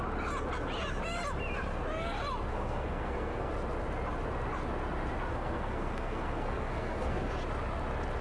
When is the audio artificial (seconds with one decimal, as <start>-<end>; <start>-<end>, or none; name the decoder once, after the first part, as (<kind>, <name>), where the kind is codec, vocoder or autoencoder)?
2.5-3.5 (codec, SNAC); 5.3-7.3

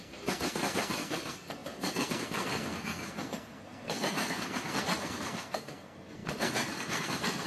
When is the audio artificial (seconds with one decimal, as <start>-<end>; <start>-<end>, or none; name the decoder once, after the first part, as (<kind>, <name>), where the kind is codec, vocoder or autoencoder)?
0.0-7.5 (codec, SNAC)

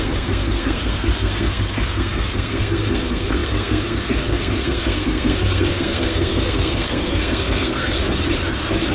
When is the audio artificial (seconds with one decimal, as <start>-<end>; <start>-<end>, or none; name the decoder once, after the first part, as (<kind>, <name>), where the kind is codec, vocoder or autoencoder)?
0.0-8.0 (codec, SNAC)

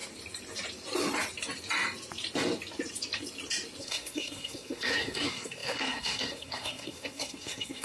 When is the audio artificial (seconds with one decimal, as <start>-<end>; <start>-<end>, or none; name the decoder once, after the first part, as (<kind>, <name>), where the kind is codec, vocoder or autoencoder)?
3.8-7.8 (codec, SNAC)

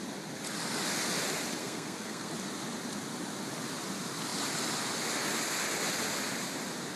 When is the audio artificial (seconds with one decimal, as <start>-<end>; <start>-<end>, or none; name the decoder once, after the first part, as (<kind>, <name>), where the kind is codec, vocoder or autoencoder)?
1.6-2.3 (codec, SNAC)

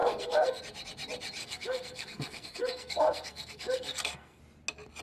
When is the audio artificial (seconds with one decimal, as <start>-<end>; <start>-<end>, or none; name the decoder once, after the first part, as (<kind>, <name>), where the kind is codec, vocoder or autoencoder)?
0.0-0.6 (codec, SNAC); 1.4-4.4